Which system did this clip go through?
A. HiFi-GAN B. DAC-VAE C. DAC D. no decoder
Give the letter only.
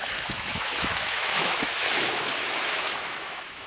B